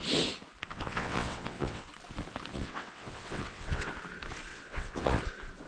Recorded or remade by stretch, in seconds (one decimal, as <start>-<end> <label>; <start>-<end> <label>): 0.0-0.7 recorded; 0.7-1.9 remade; 1.9-2.5 recorded; 2.5-3.9 remade; 3.9-4.5 recorded; 4.5-5.2 remade; 5.2-5.7 recorded